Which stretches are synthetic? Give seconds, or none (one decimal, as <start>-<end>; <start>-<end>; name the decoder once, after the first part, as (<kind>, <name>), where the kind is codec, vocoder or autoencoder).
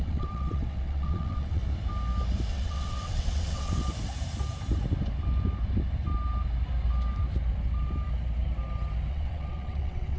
0.0-1.6 (vocoder, WaveNeXt); 2.5-3.8; 9.1-10.2